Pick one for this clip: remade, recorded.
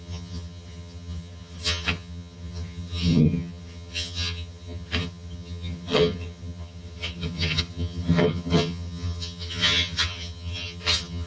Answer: remade